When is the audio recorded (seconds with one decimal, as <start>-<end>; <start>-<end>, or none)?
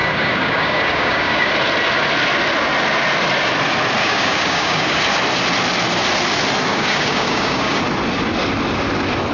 1.5-4.0; 5.0-6.7; 7.8-9.3